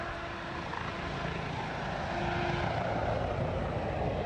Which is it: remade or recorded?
recorded